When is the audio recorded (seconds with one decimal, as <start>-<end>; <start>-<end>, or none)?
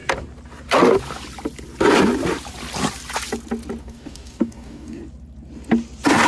0.0-3.8; 5.0-6.3